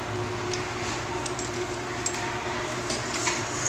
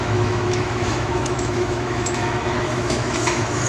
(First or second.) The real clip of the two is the first